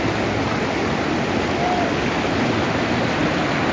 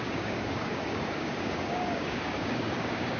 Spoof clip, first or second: second